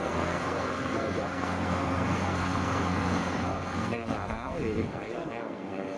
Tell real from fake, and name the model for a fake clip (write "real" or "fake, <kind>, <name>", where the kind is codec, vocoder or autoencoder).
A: fake, codec, SNAC